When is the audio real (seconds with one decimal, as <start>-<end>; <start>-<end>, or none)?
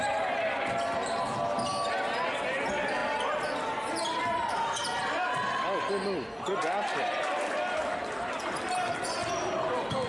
0.0-10.1